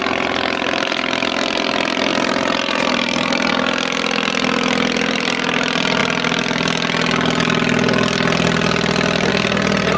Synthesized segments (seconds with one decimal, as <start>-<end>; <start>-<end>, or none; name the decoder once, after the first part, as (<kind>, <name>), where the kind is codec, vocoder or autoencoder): 2.1-3.5 (vocoder, BigVGAN v2)